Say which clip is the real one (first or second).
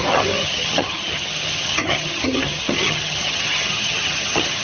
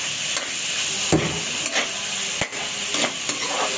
second